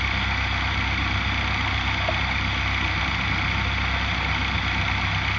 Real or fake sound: real